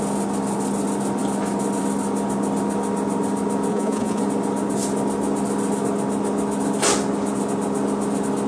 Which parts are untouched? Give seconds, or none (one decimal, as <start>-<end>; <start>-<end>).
0.0-3.7; 4.2-8.5